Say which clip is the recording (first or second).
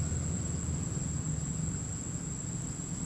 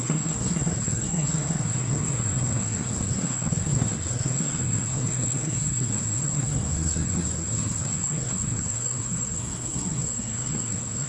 first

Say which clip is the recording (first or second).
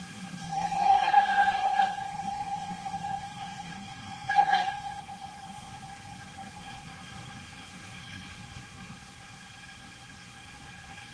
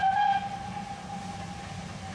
second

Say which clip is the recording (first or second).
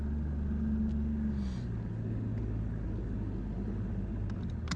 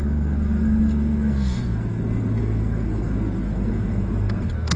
first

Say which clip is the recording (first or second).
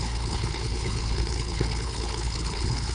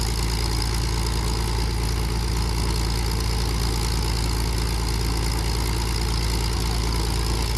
second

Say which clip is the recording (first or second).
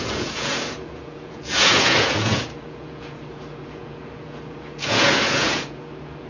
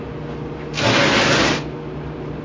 second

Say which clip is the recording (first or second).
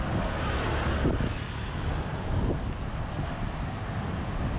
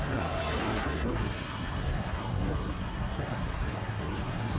first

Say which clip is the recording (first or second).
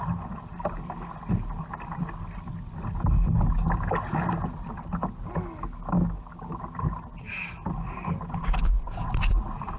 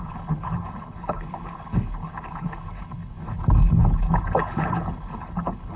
first